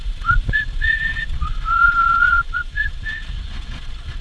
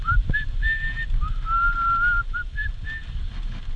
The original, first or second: second